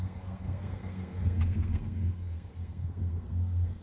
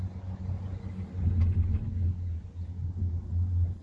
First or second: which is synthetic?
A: first